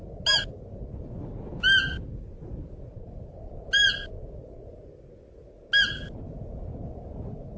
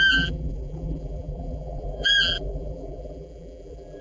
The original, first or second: first